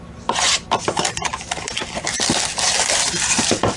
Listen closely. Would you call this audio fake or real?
real